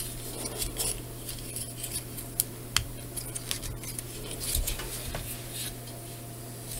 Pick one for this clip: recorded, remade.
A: recorded